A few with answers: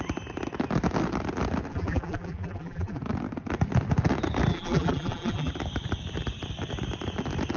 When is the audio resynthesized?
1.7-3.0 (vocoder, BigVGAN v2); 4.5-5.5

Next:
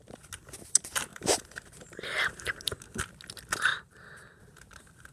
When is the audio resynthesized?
1.1-2.5 (vocoder, BigVGAN v2); 3.7-4.4

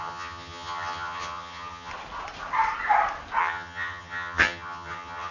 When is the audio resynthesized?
0.0-1.9 (vocoder, HiFi-GAN); 3.4-5.3

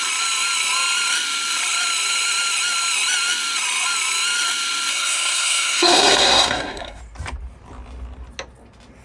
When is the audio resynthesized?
4.9-7.0 (codec, SNAC)

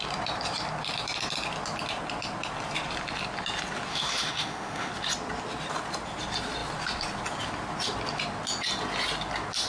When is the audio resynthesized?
3.9-4.9 (autoencoder, DAC-VAE)

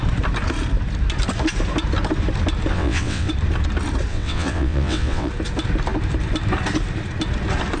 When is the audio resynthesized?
2.7-3.3 (vocoder, WaveNeXt); 4.1-5.3

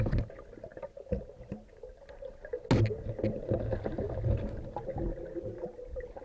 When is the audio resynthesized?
none

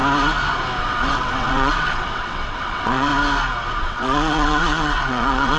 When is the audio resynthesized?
0.8-3.1 (vocoder, WaveNeXt); 3.8-5.6